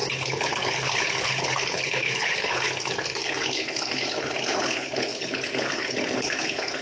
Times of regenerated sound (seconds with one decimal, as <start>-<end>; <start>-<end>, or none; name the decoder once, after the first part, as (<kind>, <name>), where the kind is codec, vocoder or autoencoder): 0.0-6.8 (codec, HILCodec)